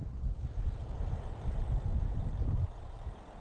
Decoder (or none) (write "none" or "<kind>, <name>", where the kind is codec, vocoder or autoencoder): none